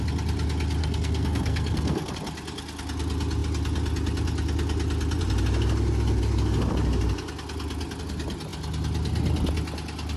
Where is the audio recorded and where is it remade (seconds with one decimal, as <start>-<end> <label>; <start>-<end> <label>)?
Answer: 0.0-0.8 recorded; 0.8-2.1 remade; 2.1-10.2 recorded